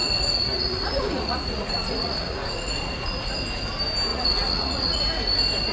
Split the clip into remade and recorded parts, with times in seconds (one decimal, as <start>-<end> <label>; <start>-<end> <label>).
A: 0.0-3.4 remade; 3.4-4.1 recorded; 4.1-5.0 remade; 5.0-5.7 recorded